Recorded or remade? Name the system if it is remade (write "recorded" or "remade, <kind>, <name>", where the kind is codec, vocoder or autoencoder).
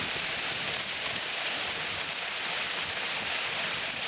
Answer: recorded